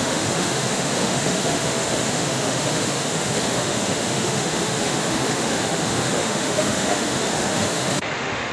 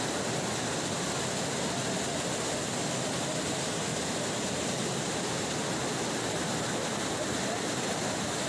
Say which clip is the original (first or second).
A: second